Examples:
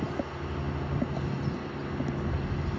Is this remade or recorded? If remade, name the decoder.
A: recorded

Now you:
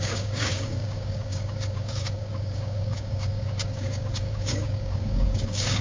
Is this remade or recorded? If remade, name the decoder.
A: remade, codec, DAC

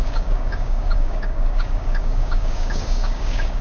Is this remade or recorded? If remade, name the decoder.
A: remade, codec, DAC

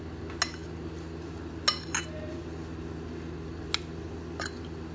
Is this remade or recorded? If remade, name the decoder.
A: recorded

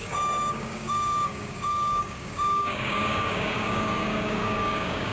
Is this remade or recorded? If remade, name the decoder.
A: remade, codec, DAC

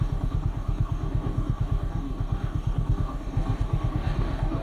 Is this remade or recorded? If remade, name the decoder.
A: remade, codec, DAC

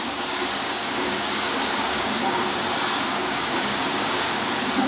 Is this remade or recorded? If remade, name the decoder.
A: remade, codec, DAC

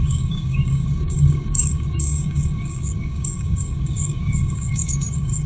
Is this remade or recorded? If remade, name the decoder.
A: remade, codec, DAC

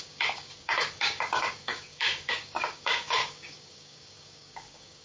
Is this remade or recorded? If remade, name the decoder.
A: remade, codec, DAC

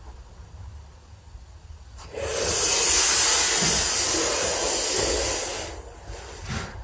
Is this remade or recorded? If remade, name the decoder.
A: recorded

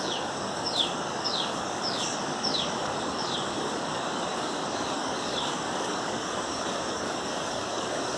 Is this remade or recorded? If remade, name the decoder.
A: remade, codec, DAC